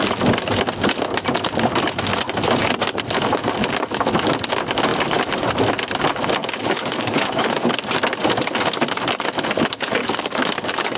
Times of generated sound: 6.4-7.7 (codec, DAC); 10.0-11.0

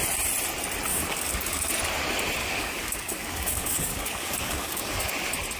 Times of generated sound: 0.9-1.7 (codec, DAC); 2.4-5.1

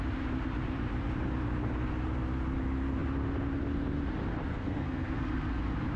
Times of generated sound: 4.5-5.6 (codec, SNAC)

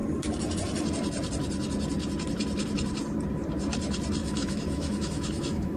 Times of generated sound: 4.2-5.8 (autoencoder, DAC-VAE)

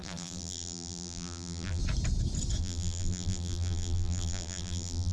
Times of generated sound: 0.0-1.8 (vocoder, BigVGAN v2); 2.6-5.1

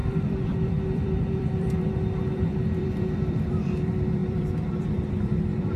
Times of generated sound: 0.0-5.8 (vocoder, BigVGAN v2)

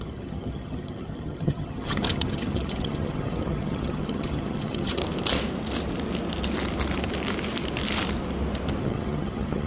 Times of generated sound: 0.0-5.0 (vocoder, HiFi-GAN); 8.8-9.7